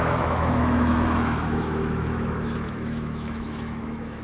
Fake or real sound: fake